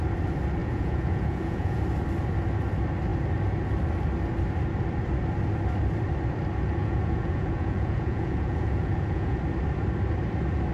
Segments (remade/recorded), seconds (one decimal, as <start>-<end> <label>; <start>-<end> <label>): 0.0-0.6 recorded; 0.6-1.8 remade; 1.8-6.8 recorded; 6.8-9.4 remade; 9.4-10.7 recorded